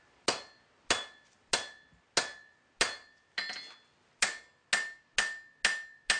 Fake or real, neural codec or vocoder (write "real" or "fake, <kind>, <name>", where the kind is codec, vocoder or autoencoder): real